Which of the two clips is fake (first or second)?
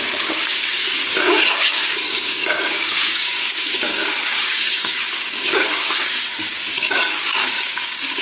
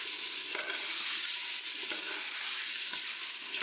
first